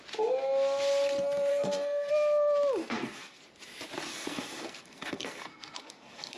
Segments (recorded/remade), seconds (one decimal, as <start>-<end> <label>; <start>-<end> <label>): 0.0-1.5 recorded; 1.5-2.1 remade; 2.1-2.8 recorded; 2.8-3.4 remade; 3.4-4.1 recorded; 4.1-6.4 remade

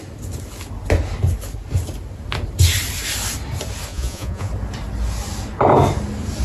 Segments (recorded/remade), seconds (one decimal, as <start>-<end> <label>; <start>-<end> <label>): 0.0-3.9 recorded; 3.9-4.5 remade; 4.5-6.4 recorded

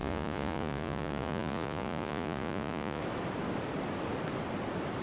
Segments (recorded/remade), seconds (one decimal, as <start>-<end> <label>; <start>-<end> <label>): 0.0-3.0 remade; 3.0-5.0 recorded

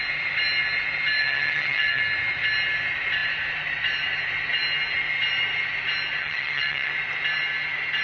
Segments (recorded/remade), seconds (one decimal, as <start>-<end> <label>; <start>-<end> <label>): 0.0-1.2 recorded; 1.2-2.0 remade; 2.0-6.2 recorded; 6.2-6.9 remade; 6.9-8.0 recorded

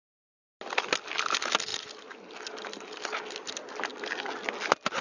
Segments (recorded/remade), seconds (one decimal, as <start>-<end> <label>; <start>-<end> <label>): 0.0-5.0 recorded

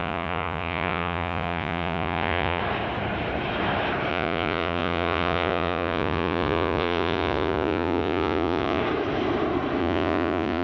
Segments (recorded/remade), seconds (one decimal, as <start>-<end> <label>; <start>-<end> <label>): 0.0-2.6 remade; 2.6-4.1 recorded; 4.1-8.8 remade; 8.8-9.8 recorded; 9.8-10.6 remade

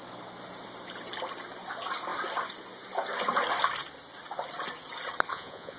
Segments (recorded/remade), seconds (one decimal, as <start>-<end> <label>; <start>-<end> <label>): 0.0-5.3 recorded; 5.3-5.8 remade